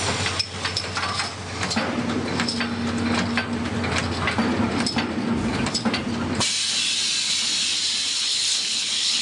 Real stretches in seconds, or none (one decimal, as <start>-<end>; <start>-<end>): 0.0-8.1